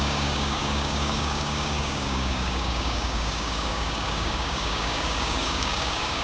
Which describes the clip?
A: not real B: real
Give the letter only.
A